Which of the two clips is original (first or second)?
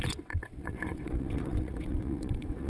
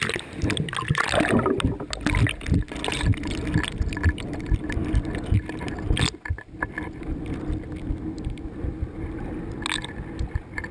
second